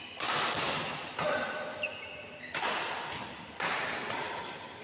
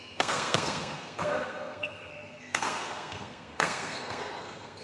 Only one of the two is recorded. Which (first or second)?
first